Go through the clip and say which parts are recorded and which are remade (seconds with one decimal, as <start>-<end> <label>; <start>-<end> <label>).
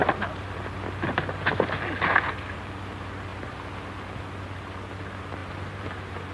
0.0-5.4 recorded; 5.4-6.3 remade